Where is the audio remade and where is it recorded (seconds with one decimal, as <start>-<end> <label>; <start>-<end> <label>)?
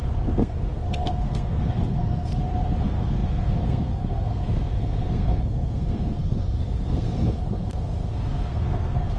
0.0-2.3 remade; 2.3-2.8 recorded; 2.8-9.2 remade